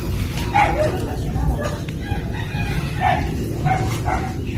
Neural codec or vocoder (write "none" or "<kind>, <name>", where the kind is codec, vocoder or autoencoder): none